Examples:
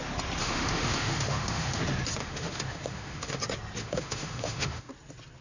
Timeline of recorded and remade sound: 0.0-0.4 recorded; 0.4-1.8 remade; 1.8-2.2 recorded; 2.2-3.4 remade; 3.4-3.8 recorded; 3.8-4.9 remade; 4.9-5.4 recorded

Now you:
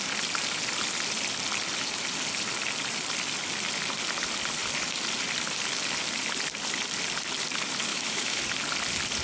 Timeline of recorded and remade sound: 0.0-7.9 recorded; 7.9-8.4 remade; 8.4-9.2 recorded

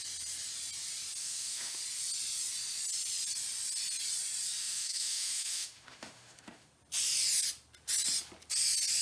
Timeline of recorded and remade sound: 0.0-1.2 recorded; 1.2-1.8 remade; 1.8-4.6 recorded; 4.6-6.7 remade; 6.7-9.0 recorded

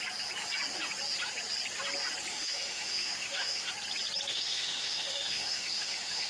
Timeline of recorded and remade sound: 0.0-2.3 recorded; 2.3-3.7 remade; 3.7-4.3 recorded; 4.3-6.3 remade

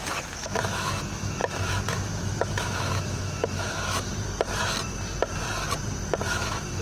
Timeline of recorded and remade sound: 0.0-4.1 remade; 4.1-6.3 recorded; 6.3-6.8 remade